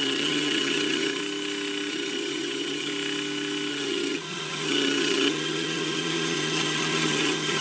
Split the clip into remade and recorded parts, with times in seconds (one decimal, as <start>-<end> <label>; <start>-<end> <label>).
0.0-1.2 remade; 1.2-1.9 recorded; 1.9-2.9 remade; 2.9-3.7 recorded; 3.7-7.6 remade